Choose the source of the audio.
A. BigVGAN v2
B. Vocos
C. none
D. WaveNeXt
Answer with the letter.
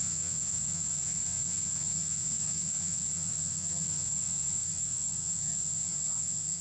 D